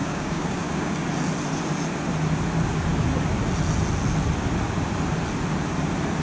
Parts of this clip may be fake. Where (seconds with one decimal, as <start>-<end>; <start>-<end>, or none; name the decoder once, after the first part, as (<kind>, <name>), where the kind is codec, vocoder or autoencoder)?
0.0-0.9 (codec, DAC)